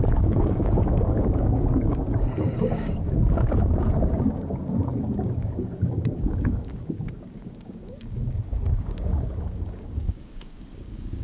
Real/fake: fake